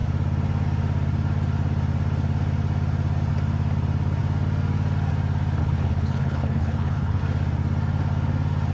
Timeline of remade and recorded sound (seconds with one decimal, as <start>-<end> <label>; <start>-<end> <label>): 0.0-5.6 recorded; 5.6-7.2 remade; 7.2-8.7 recorded